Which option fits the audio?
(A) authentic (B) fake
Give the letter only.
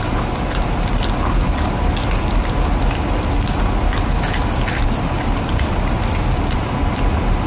A